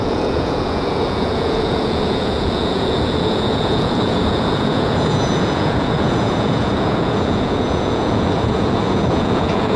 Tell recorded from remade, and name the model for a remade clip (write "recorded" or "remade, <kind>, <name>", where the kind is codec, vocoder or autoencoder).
remade, vocoder, Vocos